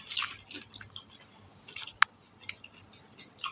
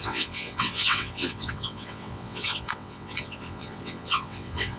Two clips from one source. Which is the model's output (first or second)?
second